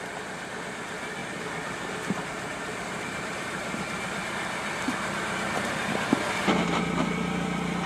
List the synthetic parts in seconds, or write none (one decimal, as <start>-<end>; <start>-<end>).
none